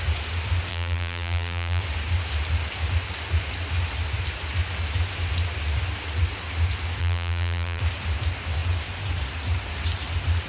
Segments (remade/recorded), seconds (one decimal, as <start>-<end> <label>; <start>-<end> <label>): 0.0-0.7 recorded; 0.7-1.8 remade; 1.8-7.0 recorded; 7.0-7.8 remade; 7.8-10.5 recorded